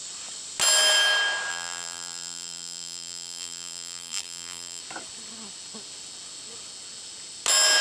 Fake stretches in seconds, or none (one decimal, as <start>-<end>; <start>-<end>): 1.5-4.8